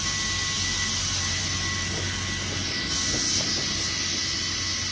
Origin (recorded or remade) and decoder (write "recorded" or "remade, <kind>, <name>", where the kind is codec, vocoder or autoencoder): recorded